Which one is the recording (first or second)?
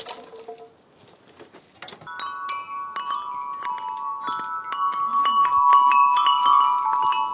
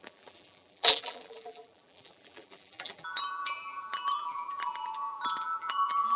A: first